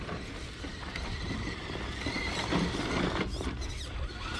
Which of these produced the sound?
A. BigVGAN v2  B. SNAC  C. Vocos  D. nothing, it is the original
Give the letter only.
D